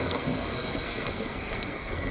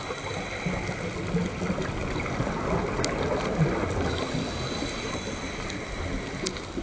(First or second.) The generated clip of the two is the first